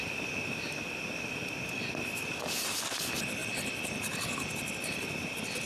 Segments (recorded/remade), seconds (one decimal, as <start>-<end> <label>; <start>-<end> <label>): 0.0-3.4 recorded; 3.4-4.7 remade; 4.7-5.7 recorded